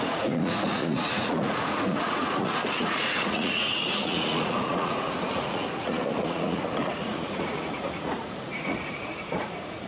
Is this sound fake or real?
fake